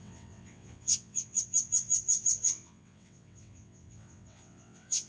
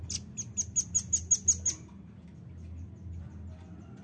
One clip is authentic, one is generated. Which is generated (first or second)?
first